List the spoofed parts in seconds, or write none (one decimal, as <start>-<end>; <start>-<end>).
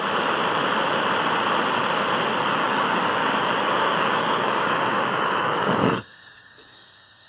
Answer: 2.6-7.3